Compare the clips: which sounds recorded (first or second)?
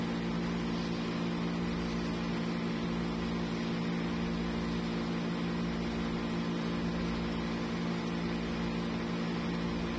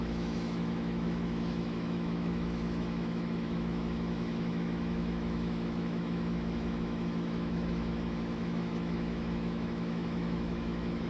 first